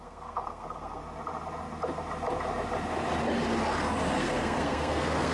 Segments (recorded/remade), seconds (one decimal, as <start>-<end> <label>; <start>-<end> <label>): 0.0-1.0 remade; 1.0-4.1 recorded; 4.1-5.3 remade